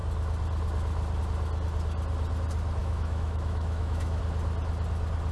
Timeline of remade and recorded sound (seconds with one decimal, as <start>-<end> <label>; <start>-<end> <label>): 0.0-2.8 recorded; 2.8-4.2 remade; 4.2-5.3 recorded